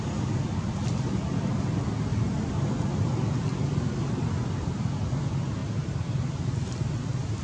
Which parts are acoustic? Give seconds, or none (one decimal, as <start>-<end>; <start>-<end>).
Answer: 0.0-5.6; 6.3-7.4